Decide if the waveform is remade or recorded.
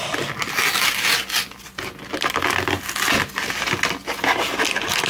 recorded